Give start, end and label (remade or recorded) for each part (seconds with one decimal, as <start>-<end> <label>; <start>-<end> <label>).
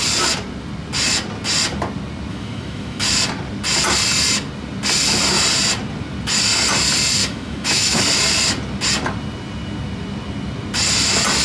0.0-2.3 recorded; 2.3-3.1 remade; 3.1-7.2 recorded; 7.2-8.0 remade; 8.0-11.4 recorded